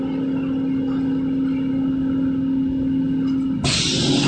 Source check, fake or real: real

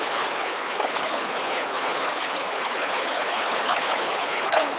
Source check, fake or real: fake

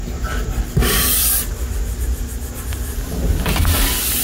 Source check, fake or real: real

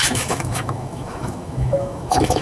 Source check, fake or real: fake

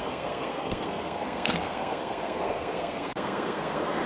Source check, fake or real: fake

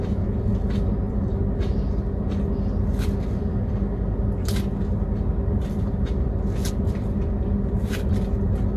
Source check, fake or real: real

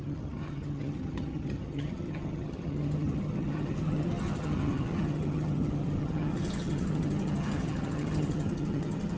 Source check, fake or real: fake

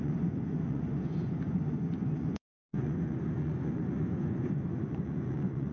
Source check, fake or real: fake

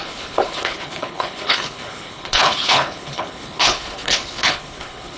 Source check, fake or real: fake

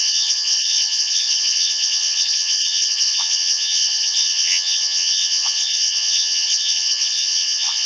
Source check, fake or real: fake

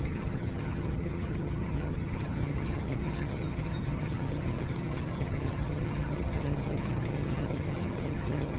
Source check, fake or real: fake